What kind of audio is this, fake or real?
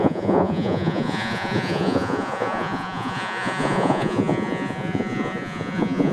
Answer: fake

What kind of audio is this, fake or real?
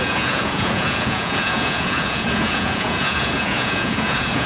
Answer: fake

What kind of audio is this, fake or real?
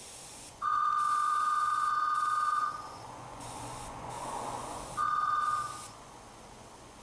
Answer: fake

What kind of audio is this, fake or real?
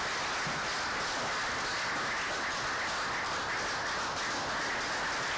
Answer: real